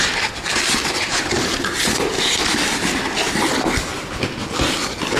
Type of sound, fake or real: real